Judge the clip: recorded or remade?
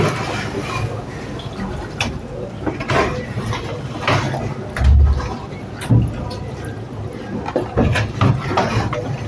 recorded